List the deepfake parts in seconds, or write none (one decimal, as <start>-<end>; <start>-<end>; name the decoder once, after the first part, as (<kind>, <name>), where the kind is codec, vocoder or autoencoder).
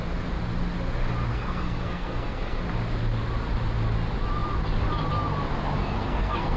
1.3-2.6 (codec, SNAC); 5.8-6.6